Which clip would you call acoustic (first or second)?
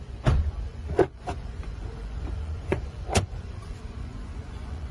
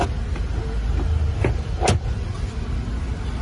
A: second